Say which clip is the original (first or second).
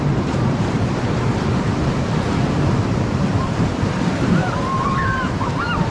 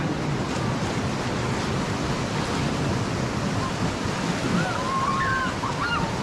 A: second